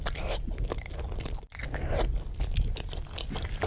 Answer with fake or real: real